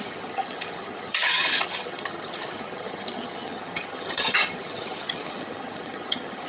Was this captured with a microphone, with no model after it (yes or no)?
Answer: no